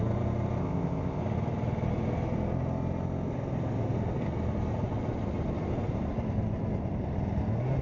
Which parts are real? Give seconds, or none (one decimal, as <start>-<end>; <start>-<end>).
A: 0.0-0.6; 1.2-7.8